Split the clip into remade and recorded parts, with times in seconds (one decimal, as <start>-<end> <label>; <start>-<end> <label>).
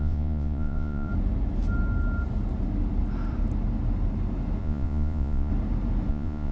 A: 0.0-1.1 remade; 1.1-4.6 recorded; 4.6-5.5 remade; 5.5-6.1 recorded; 6.1-6.5 remade